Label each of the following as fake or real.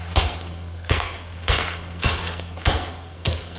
fake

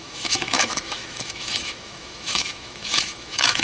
fake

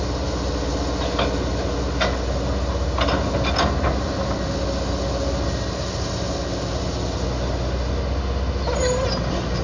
real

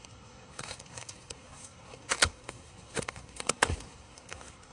fake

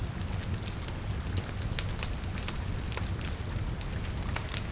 real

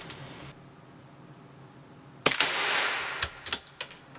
real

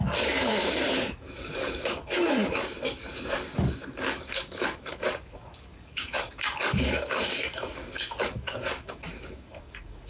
fake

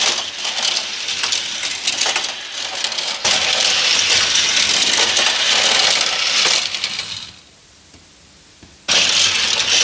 real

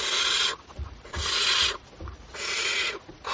fake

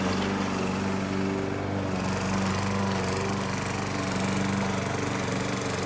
real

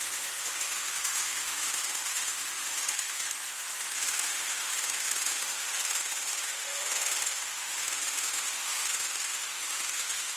fake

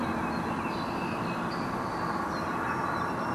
real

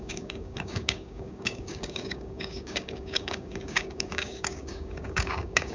fake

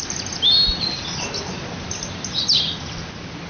real